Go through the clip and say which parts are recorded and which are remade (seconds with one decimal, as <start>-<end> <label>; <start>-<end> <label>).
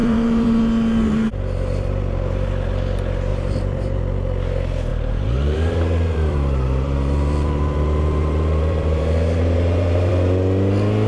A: 0.0-0.6 remade; 0.6-3.3 recorded; 3.3-4.0 remade; 4.0-4.9 recorded; 4.9-10.1 remade; 10.1-11.1 recorded